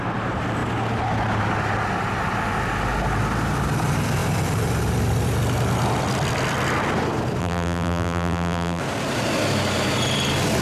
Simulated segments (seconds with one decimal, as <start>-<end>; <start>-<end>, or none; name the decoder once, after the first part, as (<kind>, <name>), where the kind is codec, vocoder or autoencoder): 7.4-8.8 (vocoder, BigVGAN v2)